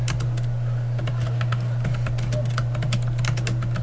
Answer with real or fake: real